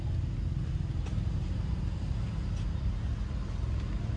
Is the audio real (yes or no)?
yes